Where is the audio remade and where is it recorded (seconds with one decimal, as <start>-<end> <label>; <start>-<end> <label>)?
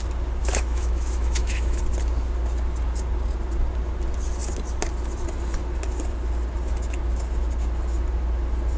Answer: 0.0-0.4 recorded; 0.4-1.8 remade; 1.8-8.8 recorded